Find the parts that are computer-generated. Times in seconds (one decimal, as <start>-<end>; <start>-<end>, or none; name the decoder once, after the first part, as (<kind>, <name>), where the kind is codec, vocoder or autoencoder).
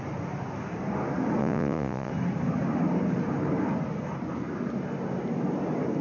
1.4-2.1 (vocoder, Vocos)